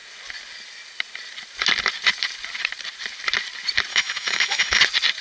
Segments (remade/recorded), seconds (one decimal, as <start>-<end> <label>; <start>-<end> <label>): 0.0-3.9 recorded; 3.9-4.8 remade; 4.8-5.2 recorded

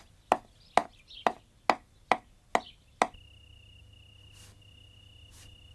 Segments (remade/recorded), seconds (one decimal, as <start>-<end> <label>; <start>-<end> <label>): 0.0-5.7 recorded

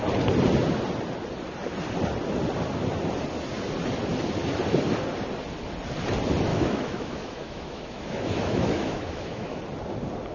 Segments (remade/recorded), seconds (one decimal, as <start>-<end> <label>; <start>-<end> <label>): 0.0-6.5 recorded; 6.5-9.6 remade; 9.6-10.3 recorded